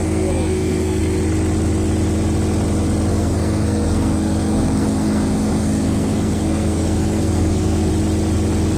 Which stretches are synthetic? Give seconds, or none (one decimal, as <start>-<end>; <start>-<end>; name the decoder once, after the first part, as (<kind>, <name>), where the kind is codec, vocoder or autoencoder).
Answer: 0.0-1.0 (codec, SNAC); 3.1-7.9